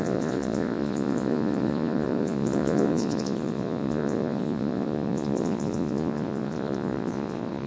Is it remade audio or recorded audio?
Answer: remade